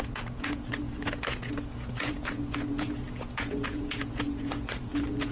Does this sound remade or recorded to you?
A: remade